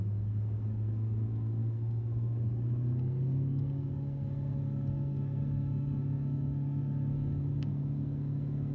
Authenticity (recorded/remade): remade